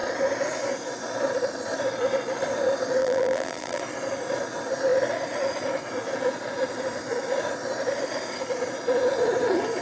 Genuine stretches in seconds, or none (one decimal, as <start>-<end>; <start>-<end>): 0.0-3.0; 3.8-9.8